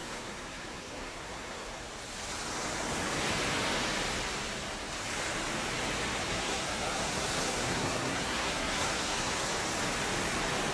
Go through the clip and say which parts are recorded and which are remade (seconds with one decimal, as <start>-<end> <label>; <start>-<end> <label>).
0.0-1.8 remade; 1.8-6.3 recorded; 6.3-9.5 remade; 9.5-10.7 recorded